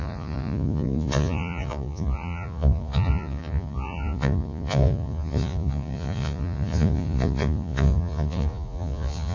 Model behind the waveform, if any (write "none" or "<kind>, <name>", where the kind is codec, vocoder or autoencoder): vocoder, Vocos